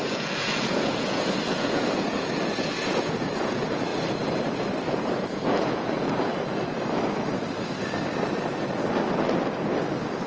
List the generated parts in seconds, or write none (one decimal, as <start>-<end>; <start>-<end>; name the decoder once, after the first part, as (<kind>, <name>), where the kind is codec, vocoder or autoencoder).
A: 0.0-3.9 (vocoder, Vocos); 4.9-6.3